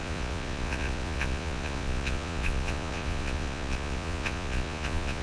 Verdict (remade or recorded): remade